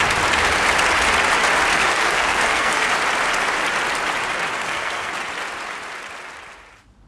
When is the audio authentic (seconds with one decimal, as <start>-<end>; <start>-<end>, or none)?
0.0-1.7; 2.9-4.5; 5.1-7.1